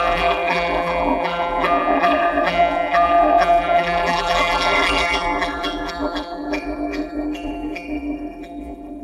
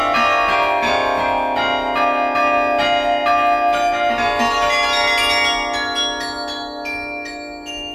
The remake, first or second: first